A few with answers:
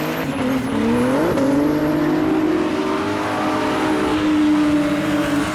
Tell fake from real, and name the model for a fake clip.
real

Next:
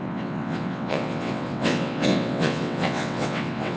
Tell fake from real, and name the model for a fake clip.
fake, vocoder, WaveNeXt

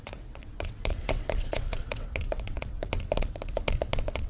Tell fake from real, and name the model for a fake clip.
fake, vocoder, WaveNeXt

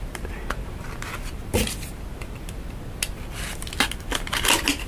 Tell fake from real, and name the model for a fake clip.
real